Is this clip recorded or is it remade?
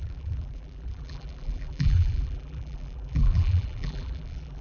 remade